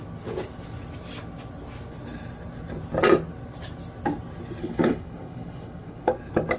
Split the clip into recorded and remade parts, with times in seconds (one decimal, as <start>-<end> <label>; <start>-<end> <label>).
0.0-4.6 recorded; 4.6-6.1 remade; 6.1-6.6 recorded